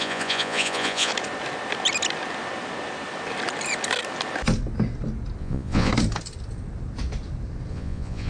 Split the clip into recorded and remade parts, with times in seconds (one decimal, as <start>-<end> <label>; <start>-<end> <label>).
0.0-1.1 remade; 1.1-5.4 recorded; 5.4-5.9 remade; 5.9-7.7 recorded; 7.7-8.3 remade